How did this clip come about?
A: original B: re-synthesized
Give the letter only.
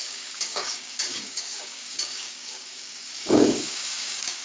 B